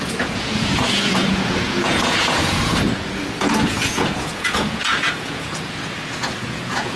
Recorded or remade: remade